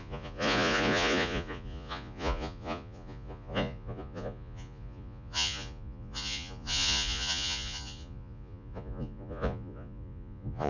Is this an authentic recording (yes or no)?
no